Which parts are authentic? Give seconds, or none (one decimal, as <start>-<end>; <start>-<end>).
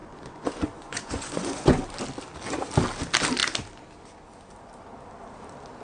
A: 1.8-5.8